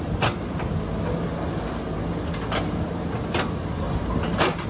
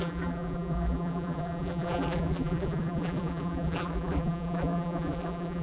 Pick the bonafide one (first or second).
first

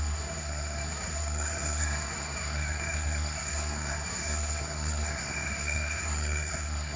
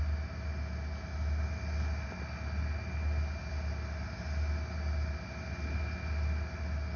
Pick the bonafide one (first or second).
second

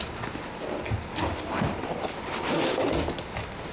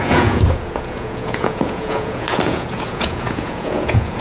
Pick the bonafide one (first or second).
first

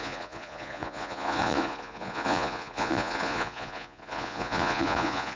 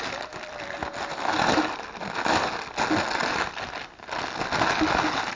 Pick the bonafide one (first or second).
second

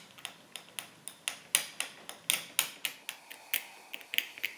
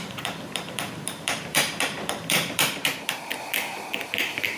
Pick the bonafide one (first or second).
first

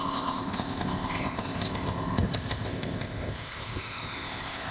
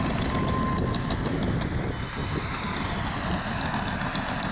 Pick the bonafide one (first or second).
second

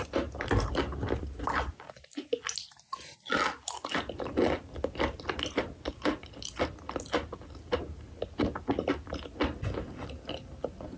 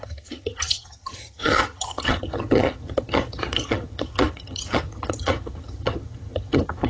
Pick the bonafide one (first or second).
first